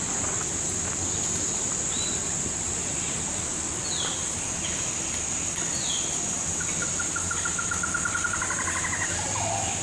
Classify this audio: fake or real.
real